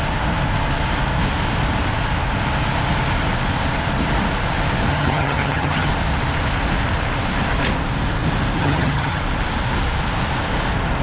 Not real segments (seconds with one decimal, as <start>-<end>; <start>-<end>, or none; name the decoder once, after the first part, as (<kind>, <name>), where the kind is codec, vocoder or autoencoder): 4.9-5.9 (vocoder, HiFi-GAN); 8.6-9.2